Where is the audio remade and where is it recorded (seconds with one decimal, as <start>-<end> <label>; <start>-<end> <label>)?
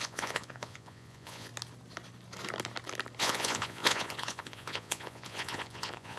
0.0-1.5 remade; 1.5-3.2 recorded; 3.2-6.2 remade